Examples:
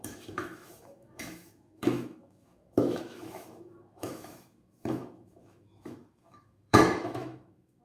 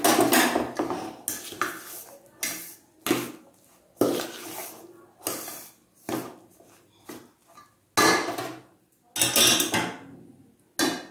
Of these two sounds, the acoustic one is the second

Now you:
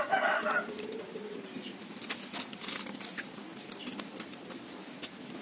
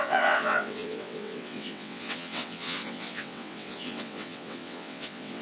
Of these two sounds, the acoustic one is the first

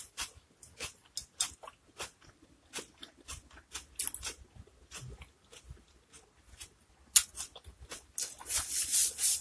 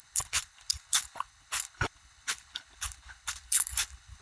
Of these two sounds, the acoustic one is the first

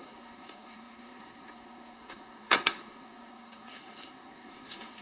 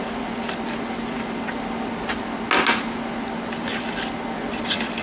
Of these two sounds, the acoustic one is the second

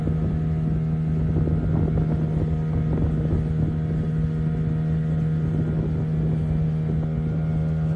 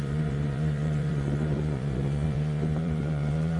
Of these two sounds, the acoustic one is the first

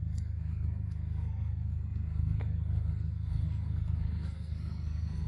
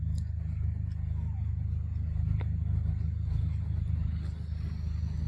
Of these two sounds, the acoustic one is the second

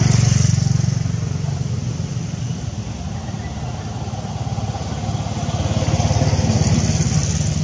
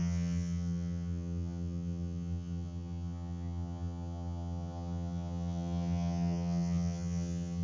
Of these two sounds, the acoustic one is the first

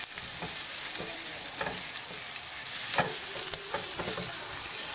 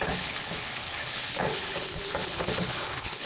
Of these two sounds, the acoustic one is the first